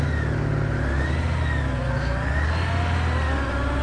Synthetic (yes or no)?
no